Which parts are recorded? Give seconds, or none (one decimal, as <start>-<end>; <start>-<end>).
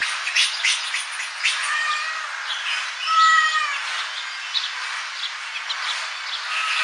1.9-6.8